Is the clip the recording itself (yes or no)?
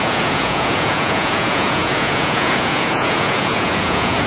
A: no